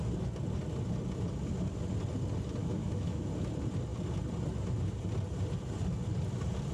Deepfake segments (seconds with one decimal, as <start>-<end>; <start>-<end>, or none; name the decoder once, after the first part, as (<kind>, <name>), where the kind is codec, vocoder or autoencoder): 2.6-3.3 (autoencoder, DAC-VAE)